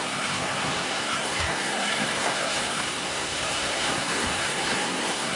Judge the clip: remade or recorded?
remade